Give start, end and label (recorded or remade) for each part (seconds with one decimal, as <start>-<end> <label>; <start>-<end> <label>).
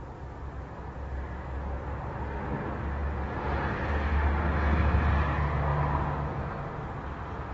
0.0-7.5 recorded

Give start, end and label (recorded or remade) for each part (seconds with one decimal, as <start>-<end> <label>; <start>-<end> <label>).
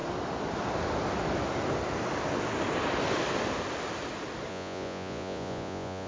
0.0-4.5 recorded; 4.5-6.1 remade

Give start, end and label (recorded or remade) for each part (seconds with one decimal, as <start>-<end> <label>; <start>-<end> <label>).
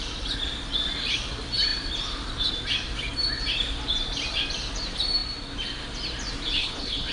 0.0-6.6 recorded; 6.6-7.1 remade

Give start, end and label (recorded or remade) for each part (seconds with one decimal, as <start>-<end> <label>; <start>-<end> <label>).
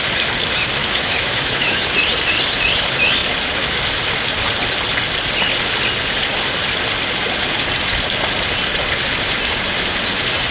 0.0-0.8 recorded; 0.8-1.9 remade; 1.9-10.5 recorded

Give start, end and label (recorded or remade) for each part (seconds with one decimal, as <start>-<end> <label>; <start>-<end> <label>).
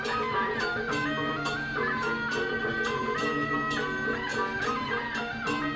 0.0-5.8 recorded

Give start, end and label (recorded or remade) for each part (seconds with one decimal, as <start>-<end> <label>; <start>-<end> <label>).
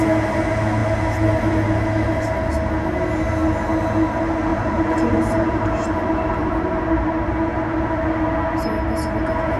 0.0-4.5 recorded; 4.5-7.3 remade; 7.3-9.6 recorded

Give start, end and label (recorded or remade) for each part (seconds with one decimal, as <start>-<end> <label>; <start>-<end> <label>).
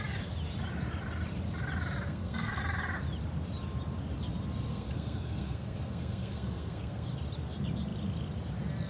0.0-2.1 recorded; 2.1-2.6 remade; 2.6-4.7 recorded; 4.7-7.1 remade; 7.1-8.9 recorded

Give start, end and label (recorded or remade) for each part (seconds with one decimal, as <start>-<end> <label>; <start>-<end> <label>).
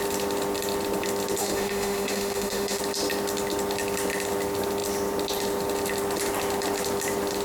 0.0-1.4 recorded; 1.4-2.8 remade; 2.8-7.4 recorded